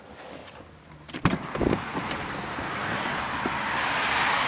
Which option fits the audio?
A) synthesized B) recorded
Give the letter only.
B